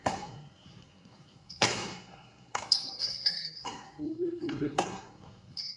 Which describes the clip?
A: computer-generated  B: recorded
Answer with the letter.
A